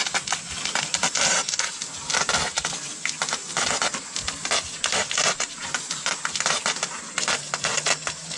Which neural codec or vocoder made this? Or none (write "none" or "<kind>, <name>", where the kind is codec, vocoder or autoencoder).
none